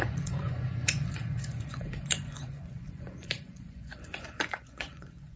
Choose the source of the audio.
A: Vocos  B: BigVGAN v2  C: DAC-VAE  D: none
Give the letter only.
A